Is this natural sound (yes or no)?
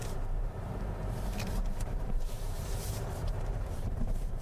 no